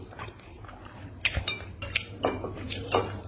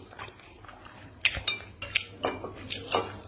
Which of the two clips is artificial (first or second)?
first